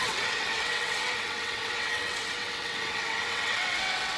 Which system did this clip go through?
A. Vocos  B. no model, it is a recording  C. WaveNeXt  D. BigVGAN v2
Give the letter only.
C